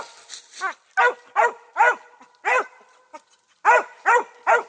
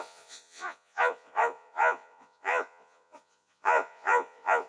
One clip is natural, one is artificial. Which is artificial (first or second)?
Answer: second